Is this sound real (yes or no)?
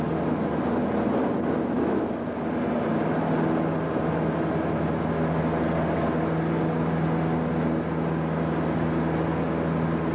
yes